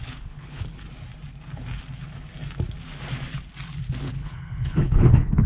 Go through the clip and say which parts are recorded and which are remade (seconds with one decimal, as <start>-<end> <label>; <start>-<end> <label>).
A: 0.0-0.7 remade; 0.7-4.0 recorded; 4.0-5.5 remade